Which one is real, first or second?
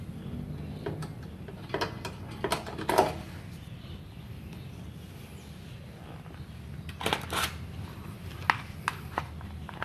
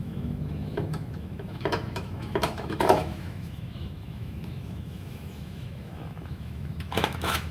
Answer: first